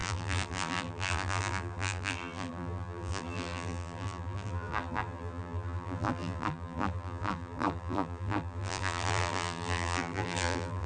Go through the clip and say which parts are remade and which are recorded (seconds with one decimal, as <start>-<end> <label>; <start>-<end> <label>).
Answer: 0.0-10.9 remade